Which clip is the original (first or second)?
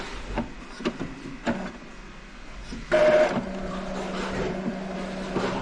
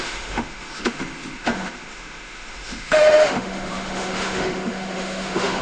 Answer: first